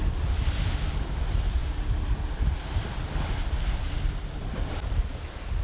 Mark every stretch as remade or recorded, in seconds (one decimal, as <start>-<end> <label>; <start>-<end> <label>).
0.0-5.6 recorded